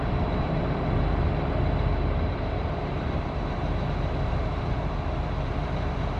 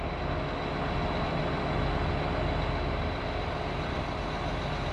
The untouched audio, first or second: second